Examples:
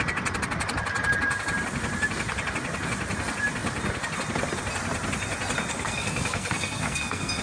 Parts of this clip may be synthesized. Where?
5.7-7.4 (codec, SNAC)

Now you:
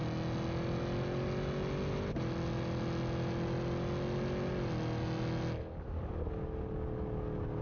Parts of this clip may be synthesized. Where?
none

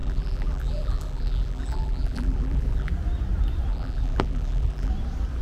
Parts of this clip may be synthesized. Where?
0.0-2.9 (vocoder, BigVGAN v2); 3.7-4.9

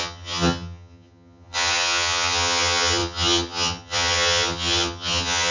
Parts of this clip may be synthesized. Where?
0.0-5.5 (vocoder, HiFi-GAN)

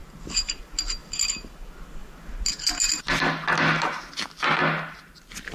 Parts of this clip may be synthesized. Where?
0.0-0.6 (vocoder, BigVGAN v2); 1.0-1.5

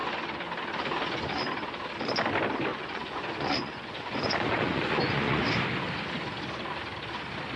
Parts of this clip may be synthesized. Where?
2.7-5.4 (vocoder, Vocos)